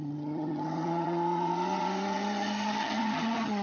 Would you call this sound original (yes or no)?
no